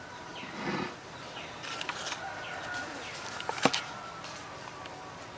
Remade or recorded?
recorded